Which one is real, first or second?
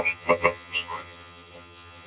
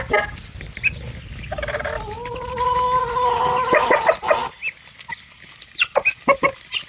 second